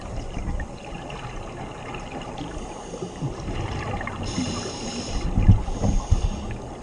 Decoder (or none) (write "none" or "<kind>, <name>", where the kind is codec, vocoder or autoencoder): none